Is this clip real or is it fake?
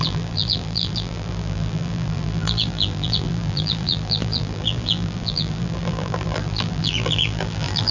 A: fake